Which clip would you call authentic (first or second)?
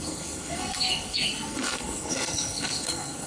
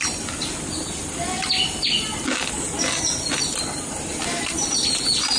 second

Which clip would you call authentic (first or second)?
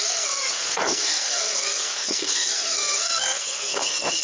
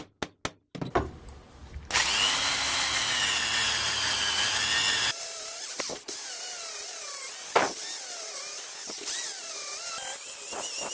second